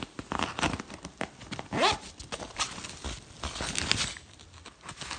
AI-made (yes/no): no